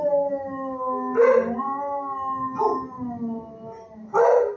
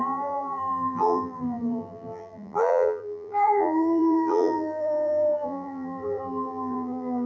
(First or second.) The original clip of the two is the first